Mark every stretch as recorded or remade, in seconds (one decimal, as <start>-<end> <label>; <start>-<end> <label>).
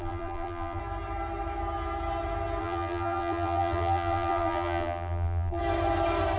0.0-0.8 remade; 0.8-2.6 recorded; 2.6-5.6 remade; 5.6-6.4 recorded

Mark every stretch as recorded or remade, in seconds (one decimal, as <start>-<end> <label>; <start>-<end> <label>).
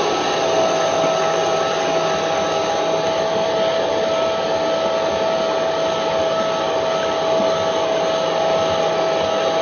0.0-9.6 recorded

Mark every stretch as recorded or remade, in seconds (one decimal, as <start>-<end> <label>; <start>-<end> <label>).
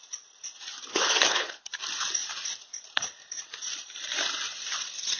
0.0-0.9 recorded; 0.9-1.7 remade; 1.7-5.2 recorded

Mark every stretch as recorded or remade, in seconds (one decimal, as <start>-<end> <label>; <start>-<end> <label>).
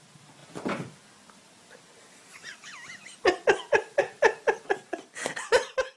0.0-6.0 recorded